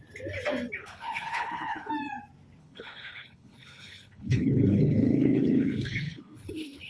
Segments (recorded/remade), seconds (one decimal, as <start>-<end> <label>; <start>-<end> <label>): 0.0-0.8 recorded; 0.8-1.9 remade; 1.9-2.6 recorded; 2.6-6.9 remade